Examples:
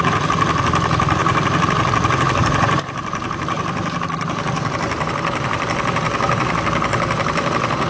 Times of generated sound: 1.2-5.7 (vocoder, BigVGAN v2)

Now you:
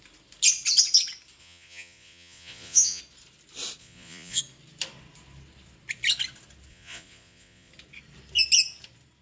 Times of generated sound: 1.4-3.0 (vocoder, Vocos); 3.8-4.4; 6.7-7.7